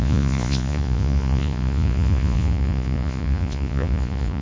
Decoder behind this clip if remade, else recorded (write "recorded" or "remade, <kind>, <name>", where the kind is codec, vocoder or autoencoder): remade, vocoder, Vocos